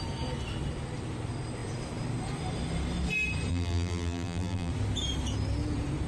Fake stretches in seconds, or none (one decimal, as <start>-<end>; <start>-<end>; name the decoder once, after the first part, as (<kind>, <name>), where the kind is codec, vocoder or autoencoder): 3.5-4.7 (vocoder, BigVGAN v2)